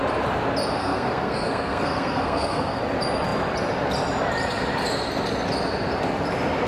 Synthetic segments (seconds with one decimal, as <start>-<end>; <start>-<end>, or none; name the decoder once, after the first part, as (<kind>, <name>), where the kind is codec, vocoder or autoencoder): 0.8-2.8 (codec, SNAC)